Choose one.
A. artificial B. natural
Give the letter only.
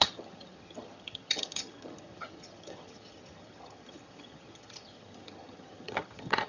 A